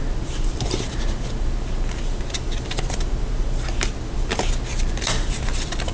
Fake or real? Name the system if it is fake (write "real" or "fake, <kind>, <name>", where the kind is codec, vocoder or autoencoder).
real